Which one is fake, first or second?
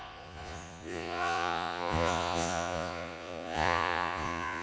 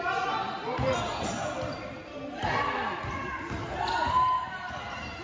first